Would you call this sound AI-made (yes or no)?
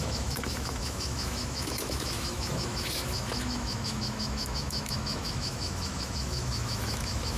yes